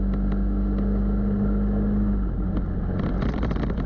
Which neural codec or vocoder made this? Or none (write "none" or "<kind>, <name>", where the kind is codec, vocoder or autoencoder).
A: none